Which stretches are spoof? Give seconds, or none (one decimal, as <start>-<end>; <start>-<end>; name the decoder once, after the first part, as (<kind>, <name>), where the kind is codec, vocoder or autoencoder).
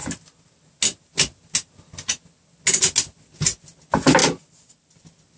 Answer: 4.2-5.0 (vocoder, BigVGAN v2)